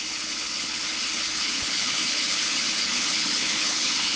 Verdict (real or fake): fake